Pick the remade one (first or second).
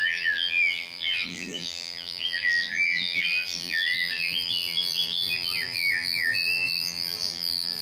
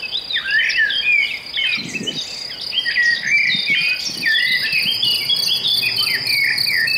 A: first